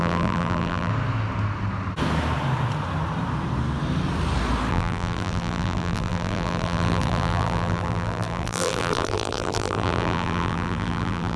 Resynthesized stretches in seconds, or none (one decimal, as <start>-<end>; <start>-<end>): 0.0-0.9; 4.7-11.4